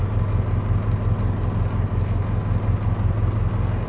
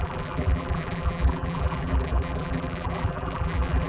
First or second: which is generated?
second